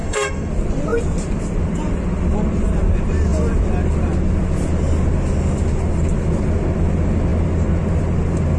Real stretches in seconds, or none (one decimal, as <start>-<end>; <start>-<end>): 0.5-8.6